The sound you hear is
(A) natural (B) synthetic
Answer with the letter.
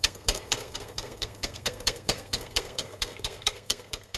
B